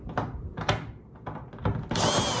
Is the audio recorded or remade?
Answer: recorded